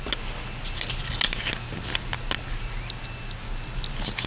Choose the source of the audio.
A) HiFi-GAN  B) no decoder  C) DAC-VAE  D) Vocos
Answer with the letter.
B